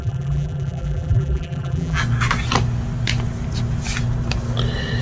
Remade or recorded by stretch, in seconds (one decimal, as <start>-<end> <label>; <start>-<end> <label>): 0.0-2.0 remade; 2.0-5.0 recorded